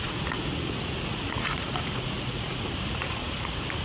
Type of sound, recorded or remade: remade